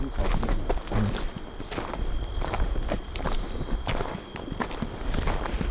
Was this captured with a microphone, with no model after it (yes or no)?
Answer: yes